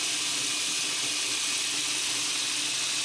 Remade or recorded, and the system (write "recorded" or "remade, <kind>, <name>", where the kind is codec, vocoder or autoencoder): recorded